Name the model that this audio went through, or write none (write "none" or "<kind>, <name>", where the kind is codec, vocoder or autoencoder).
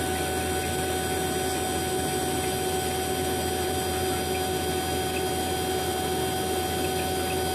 none